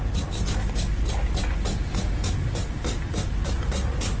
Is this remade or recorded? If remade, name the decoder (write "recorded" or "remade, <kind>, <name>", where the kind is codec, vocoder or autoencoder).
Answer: recorded